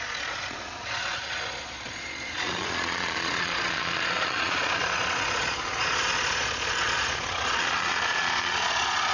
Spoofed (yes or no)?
yes